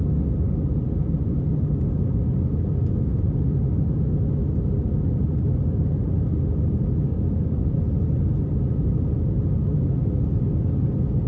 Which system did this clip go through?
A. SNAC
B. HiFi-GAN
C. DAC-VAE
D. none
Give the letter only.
D